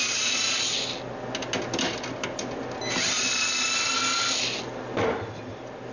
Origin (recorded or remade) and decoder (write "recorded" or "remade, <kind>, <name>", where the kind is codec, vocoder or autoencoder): recorded